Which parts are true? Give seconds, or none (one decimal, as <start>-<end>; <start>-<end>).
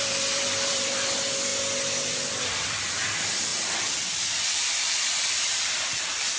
1.5-2.3